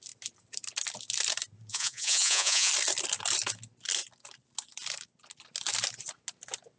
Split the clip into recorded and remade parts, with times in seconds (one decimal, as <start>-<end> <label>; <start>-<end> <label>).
0.0-1.7 recorded; 1.7-2.7 remade; 2.7-6.8 recorded